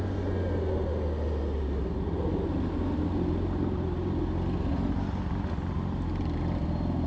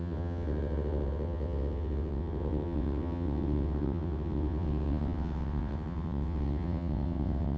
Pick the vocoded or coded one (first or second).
second